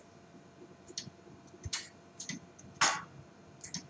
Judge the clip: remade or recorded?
recorded